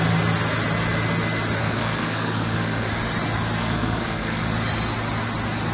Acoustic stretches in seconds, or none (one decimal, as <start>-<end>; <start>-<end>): 0.0-1.6; 2.9-3.6; 4.4-5.7